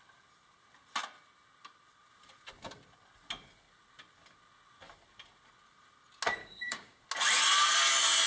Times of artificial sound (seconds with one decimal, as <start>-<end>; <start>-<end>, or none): 6.4-7.0